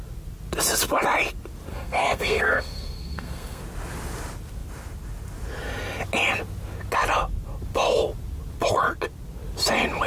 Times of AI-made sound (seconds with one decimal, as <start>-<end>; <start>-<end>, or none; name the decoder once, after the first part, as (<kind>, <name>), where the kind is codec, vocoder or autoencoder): 1.7-3.6 (codec, SNAC)